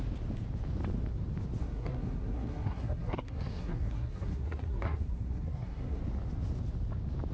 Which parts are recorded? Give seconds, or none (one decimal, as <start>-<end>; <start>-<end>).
0.0-1.6; 6.0-7.3